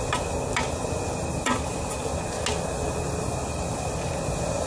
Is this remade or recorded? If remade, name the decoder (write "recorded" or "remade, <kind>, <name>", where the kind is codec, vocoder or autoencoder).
recorded